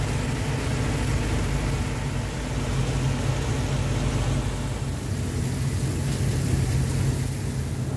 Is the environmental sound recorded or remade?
recorded